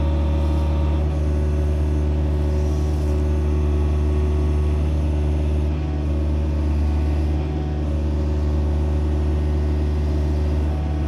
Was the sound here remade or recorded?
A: recorded